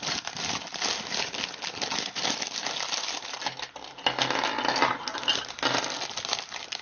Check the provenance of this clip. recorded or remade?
recorded